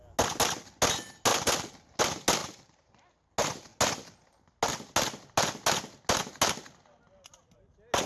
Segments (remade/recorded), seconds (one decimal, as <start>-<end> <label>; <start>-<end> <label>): 0.0-1.3 recorded; 1.3-2.0 remade; 2.0-2.4 recorded; 2.4-2.9 remade; 2.9-8.1 recorded